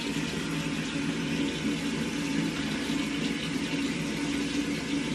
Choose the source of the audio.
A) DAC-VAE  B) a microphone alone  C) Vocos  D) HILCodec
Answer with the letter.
B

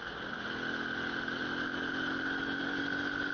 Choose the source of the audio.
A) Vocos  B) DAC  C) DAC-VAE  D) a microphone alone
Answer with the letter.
D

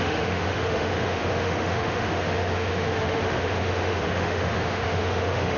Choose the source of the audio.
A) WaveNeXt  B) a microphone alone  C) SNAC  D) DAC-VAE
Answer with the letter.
D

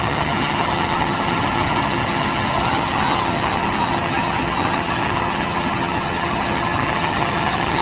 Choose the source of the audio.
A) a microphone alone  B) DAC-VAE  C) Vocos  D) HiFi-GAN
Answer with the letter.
D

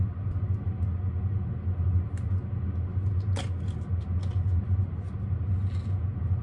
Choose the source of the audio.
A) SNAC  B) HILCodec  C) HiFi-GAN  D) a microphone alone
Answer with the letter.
D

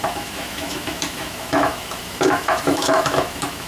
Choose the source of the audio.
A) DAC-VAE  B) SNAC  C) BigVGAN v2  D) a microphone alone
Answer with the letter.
A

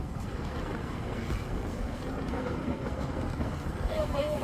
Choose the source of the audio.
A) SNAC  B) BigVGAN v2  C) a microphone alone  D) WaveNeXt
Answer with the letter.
A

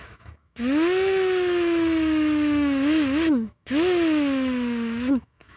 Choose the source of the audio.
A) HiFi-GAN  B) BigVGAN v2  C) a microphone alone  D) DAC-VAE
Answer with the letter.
D